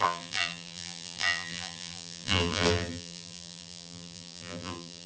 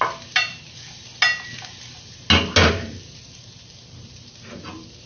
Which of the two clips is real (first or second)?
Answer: second